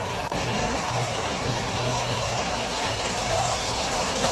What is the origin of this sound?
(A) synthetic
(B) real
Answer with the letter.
A